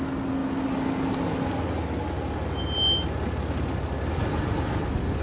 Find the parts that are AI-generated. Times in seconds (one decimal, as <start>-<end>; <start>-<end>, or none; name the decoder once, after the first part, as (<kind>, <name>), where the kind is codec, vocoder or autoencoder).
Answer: none